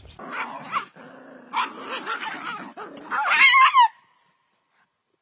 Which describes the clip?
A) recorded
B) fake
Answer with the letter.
A